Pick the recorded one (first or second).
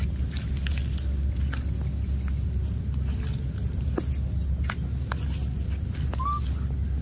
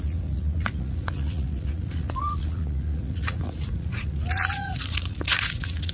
first